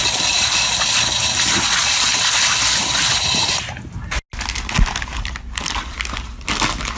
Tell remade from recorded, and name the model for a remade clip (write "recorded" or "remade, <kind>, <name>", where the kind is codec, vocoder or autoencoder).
recorded